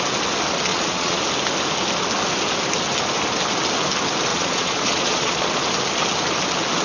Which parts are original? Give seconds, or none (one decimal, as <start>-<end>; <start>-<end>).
0.0-0.7; 1.2-4.3; 5.5-6.8

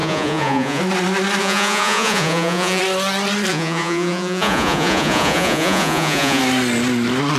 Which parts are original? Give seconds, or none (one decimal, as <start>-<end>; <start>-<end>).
0.8-1.4; 2.8-3.5; 6.4-7.4